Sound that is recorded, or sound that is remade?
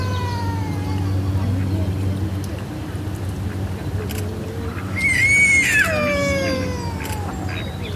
recorded